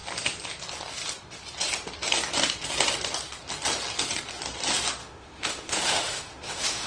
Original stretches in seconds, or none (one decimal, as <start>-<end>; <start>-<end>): 0.0-5.0